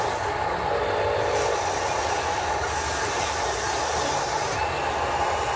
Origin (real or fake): real